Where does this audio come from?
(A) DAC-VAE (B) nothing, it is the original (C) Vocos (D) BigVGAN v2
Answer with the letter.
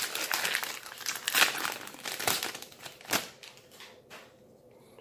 B